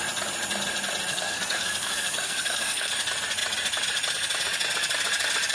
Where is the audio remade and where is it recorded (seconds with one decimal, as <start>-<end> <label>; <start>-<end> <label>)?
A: 0.0-1.1 recorded; 1.1-2.9 remade; 2.9-5.5 recorded